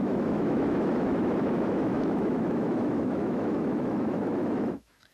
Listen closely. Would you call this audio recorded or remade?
remade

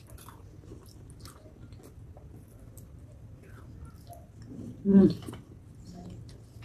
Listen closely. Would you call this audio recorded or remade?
recorded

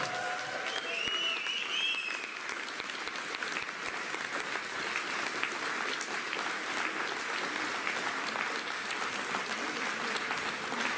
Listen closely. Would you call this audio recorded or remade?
recorded